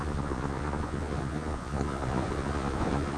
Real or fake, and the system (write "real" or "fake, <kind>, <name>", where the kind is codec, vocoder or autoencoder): fake, vocoder, Vocos